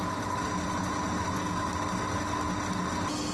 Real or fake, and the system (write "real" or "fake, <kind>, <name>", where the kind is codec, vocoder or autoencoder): real